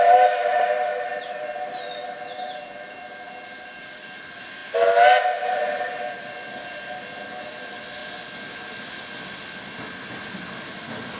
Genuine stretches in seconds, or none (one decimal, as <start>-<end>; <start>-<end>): 0.0-11.2